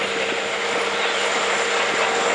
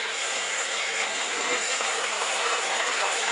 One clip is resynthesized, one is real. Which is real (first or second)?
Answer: first